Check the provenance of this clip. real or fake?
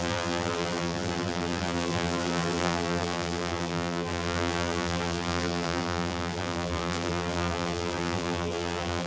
fake